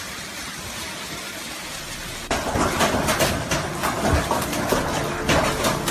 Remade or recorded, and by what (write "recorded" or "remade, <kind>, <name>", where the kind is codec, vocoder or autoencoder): recorded